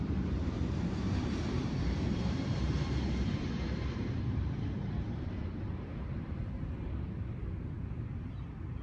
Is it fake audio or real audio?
fake